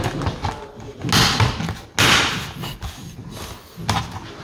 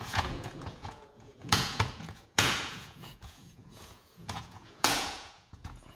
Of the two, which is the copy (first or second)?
second